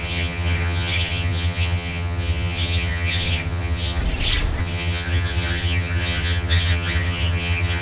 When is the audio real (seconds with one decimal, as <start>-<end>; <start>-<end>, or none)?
4.0-4.6